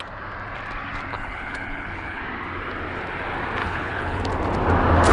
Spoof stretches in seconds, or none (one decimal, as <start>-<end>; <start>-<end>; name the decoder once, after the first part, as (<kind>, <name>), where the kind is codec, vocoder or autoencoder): 1.1-2.2 (codec, HILCodec); 3.6-4.2